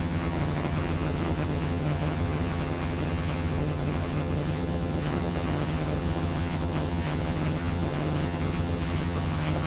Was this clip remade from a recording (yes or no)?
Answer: yes